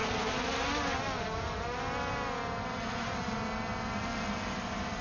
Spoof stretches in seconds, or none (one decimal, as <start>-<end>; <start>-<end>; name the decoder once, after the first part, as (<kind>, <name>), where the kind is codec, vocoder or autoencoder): 3.0-3.7 (vocoder, BigVGAN v2); 4.6-5.0